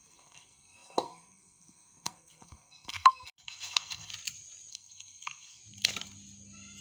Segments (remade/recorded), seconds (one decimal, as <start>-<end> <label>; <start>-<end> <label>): 0.0-4.1 remade; 4.1-4.7 recorded; 4.7-5.6 remade; 5.6-6.8 recorded